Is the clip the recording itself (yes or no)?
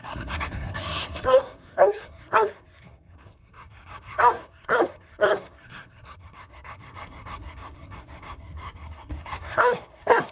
no